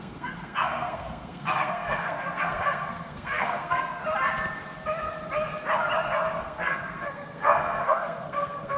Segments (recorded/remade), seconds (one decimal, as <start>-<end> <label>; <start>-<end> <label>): 0.0-4.0 remade; 4.0-6.4 recorded; 6.4-8.8 remade